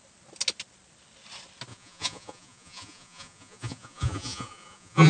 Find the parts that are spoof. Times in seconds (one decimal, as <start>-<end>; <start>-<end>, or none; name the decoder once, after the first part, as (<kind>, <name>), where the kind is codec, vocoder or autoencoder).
1.7-5.1 (vocoder, Vocos)